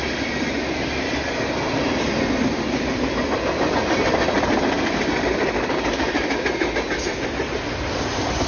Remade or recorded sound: recorded